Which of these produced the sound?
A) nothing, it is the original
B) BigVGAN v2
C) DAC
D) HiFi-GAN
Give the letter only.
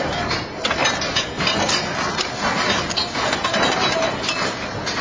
A